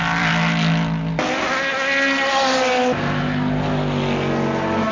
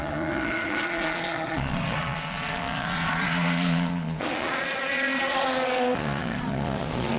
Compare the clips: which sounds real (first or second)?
first